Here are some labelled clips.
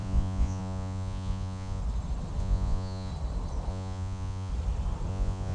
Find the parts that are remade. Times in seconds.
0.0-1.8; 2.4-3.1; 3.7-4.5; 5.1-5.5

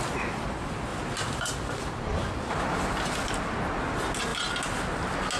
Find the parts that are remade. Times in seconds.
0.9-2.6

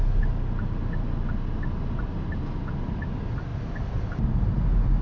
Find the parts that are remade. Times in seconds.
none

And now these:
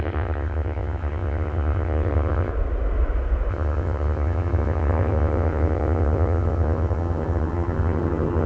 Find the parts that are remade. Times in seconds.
0.0-2.5; 3.5-8.5

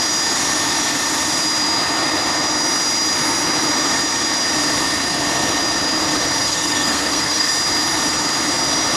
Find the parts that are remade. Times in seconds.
6.4-7.5